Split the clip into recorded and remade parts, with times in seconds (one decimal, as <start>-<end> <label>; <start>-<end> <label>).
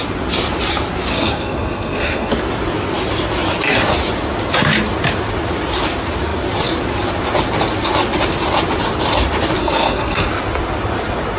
0.0-1.1 recorded; 1.1-2.3 remade; 2.3-9.6 recorded; 9.6-10.3 remade; 10.3-11.4 recorded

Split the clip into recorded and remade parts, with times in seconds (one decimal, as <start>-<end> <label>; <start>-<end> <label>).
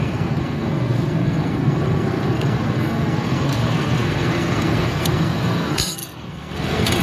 0.0-7.0 remade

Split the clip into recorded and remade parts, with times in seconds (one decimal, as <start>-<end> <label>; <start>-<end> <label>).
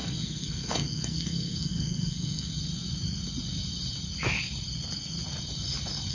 0.0-2.5 remade; 2.5-6.1 recorded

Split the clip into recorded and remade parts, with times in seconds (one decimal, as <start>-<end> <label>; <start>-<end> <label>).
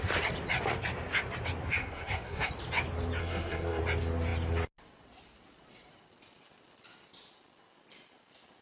0.0-1.8 recorded; 1.8-2.5 remade; 2.5-3.2 recorded; 3.2-3.8 remade; 3.8-8.6 recorded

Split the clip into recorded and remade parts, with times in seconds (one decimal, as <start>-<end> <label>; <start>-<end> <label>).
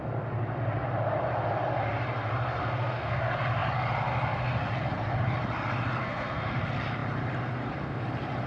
0.0-2.6 recorded; 2.6-3.2 remade; 3.2-6.0 recorded; 6.0-6.6 remade; 6.6-8.5 recorded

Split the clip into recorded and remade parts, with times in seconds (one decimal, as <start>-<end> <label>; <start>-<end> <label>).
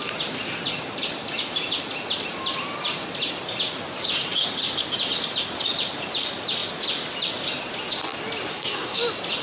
0.0-8.5 recorded; 8.5-9.0 remade; 9.0-9.4 recorded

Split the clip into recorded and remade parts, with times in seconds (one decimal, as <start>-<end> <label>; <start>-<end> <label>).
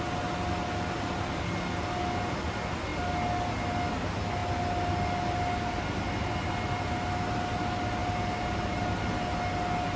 0.0-10.0 recorded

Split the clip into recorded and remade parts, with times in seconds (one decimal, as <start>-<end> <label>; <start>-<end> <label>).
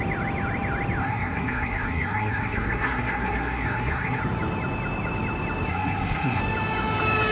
0.0-1.0 recorded; 1.0-4.2 remade; 4.2-5.7 recorded; 5.7-6.4 remade; 6.4-7.3 recorded